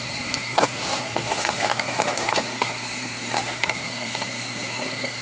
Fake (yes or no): yes